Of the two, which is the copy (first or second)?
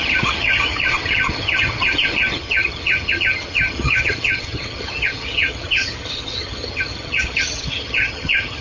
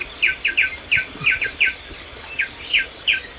first